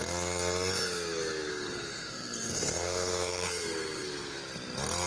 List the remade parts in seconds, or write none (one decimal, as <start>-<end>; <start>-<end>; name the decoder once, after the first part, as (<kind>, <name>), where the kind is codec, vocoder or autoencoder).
1.5-4.4 (codec, SNAC)